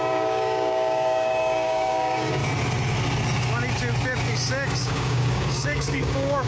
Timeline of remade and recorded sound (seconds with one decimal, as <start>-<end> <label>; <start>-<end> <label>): 0.0-2.4 remade; 2.4-4.8 recorded; 4.8-6.5 remade